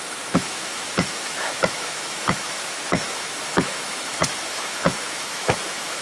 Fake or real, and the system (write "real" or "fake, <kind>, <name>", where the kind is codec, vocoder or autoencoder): fake, autoencoder, DAC-VAE